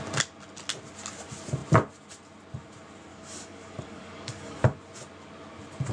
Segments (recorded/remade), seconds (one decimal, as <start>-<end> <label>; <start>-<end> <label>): 0.0-3.1 recorded; 3.1-4.6 remade; 4.6-5.9 recorded